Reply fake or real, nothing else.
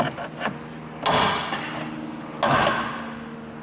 real